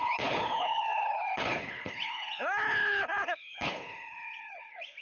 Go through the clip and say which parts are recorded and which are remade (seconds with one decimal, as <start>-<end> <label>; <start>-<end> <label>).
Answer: 0.0-5.0 remade